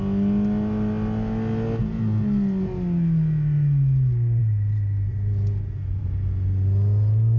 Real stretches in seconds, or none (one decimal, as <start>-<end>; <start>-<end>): 0.0-7.4